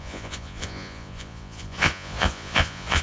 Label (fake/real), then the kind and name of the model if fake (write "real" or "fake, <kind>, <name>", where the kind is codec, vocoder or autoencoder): fake, vocoder, Vocos